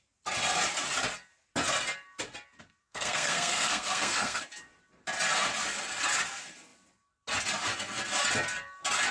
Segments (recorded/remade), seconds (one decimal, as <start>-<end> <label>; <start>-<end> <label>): 0.0-2.8 recorded; 2.8-4.4 remade; 4.4-9.1 recorded